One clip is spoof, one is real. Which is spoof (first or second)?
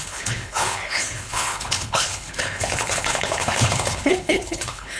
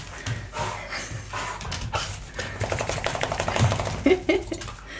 first